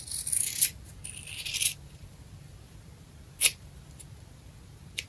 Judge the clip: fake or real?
fake